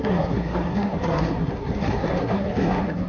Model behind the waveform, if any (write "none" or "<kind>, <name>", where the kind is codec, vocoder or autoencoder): codec, SNAC